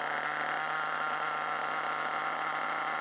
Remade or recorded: recorded